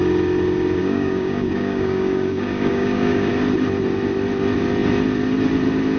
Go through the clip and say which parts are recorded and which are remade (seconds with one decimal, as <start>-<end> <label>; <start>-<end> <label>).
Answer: 0.0-0.8 recorded; 0.8-3.3 remade; 3.3-6.0 recorded